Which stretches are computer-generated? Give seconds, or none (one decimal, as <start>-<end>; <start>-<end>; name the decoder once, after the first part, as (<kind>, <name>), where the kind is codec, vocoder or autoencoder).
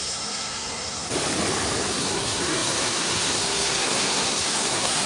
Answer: 0.0-1.1 (codec, SNAC); 1.9-5.1